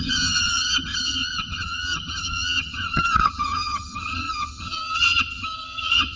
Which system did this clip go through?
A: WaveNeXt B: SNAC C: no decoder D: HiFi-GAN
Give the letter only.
D